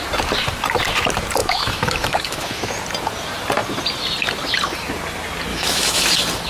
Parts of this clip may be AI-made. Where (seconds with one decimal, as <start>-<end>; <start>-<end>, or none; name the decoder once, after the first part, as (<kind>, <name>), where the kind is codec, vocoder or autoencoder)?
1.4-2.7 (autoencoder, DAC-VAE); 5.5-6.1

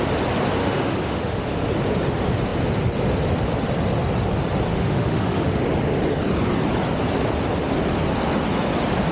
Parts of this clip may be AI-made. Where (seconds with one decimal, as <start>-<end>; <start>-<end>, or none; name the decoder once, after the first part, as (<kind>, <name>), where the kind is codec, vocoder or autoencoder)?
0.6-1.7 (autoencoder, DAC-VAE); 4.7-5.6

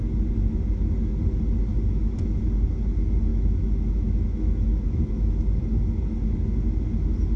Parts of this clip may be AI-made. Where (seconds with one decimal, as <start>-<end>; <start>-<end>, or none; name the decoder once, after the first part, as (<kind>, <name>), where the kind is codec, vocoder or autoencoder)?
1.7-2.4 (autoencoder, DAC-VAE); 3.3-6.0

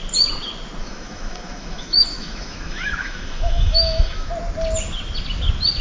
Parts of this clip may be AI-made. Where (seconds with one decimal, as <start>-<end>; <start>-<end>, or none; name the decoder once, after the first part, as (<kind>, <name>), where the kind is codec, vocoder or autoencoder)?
0.8-4.3 (autoencoder, DAC-VAE)

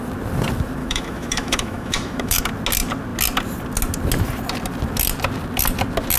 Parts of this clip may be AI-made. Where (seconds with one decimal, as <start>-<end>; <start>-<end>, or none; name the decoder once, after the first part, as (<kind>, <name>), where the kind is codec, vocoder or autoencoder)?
0.8-2.4 (autoencoder, DAC-VAE)

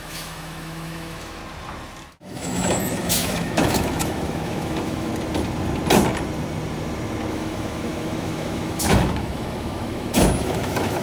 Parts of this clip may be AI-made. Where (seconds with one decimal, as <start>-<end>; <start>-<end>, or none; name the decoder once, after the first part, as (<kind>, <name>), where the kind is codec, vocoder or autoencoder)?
0.0-1.4 (autoencoder, DAC-VAE); 2.1-5.1; 7.3-11.0

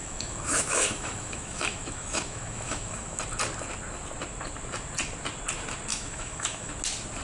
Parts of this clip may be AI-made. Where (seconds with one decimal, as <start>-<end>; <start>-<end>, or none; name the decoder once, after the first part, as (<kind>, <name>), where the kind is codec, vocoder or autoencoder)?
0.0-3.2 (autoencoder, DAC-VAE); 5.9-6.7